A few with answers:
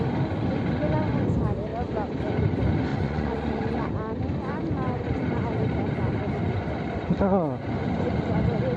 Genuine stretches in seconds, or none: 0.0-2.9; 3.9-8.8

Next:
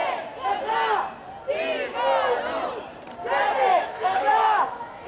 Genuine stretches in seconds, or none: 0.0-3.7

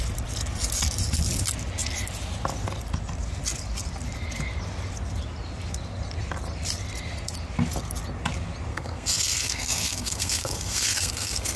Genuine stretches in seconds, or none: 0.0-8.7

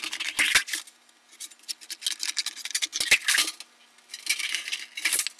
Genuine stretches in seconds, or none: 0.0-5.4

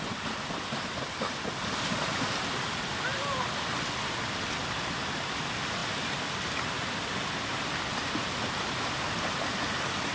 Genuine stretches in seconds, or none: 0.0-10.1

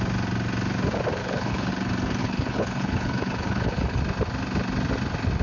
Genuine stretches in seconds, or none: 0.0-1.2; 1.7-2.2; 4.0-5.4

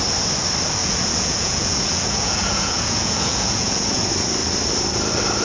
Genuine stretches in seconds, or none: 0.0-0.8; 4.0-5.4